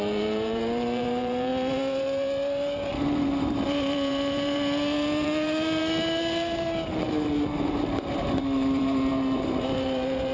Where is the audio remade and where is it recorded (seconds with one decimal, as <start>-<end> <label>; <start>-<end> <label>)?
0.0-10.3 remade